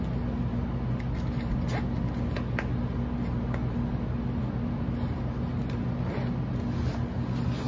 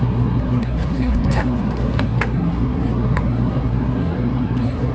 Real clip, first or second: first